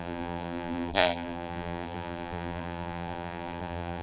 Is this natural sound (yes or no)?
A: no